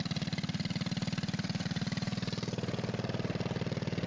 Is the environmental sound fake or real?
real